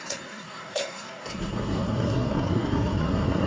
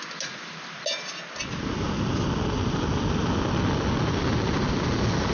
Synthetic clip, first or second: first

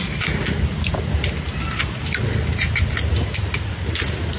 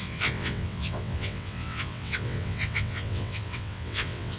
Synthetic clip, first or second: second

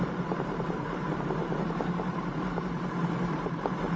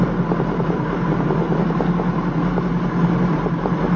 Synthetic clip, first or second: first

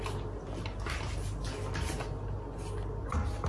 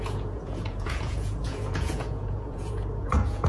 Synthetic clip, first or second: second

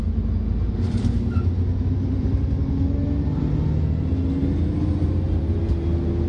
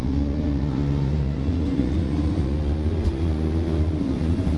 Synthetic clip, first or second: second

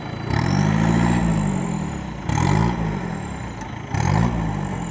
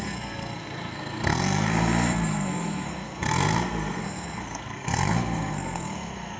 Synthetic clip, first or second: second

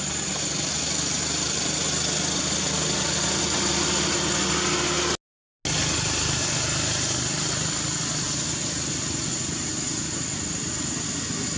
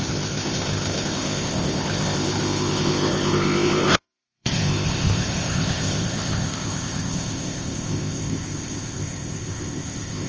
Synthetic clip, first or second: second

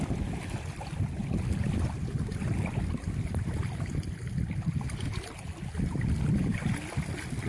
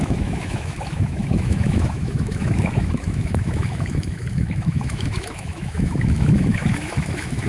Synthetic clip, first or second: second